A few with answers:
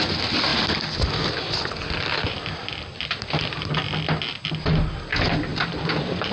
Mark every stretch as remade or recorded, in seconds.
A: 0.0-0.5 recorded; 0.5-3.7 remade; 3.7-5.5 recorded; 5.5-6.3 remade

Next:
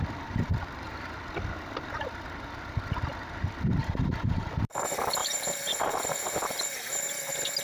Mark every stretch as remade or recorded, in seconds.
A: 0.0-3.8 recorded; 3.8-4.5 remade; 4.5-5.2 recorded; 5.2-7.0 remade; 7.0-7.6 recorded